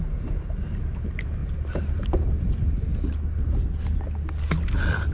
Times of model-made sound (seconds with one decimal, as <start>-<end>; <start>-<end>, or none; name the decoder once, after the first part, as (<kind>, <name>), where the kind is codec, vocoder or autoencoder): none